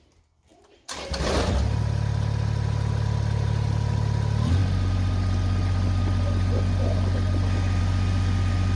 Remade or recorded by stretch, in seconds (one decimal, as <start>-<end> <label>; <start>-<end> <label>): 0.0-8.8 recorded